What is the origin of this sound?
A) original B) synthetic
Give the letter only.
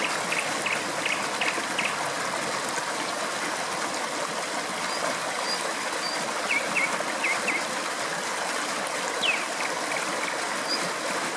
A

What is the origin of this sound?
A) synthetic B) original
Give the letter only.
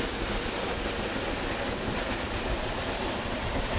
B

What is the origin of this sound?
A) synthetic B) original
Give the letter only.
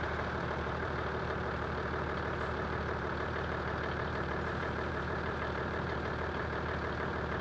A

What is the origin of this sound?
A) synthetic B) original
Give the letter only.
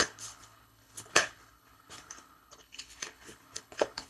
A